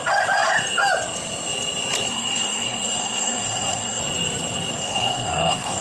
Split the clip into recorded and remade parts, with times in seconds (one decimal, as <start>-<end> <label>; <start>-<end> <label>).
0.0-2.1 recorded; 2.1-4.0 remade; 4.0-4.8 recorded; 4.8-5.8 remade